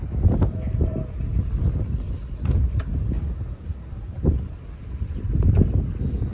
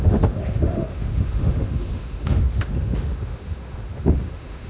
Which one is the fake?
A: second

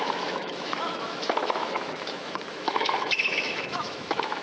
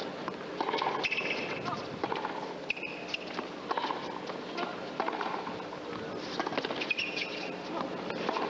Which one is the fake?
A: first